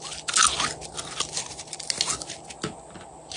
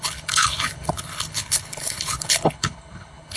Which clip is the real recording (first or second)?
first